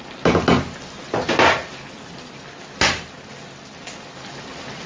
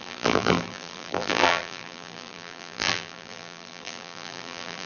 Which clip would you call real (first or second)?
first